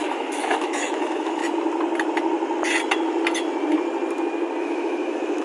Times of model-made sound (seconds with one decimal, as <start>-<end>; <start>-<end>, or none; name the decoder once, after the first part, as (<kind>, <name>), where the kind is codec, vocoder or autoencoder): 0.0-1.4 (autoencoder, DAC-VAE); 4.6-5.4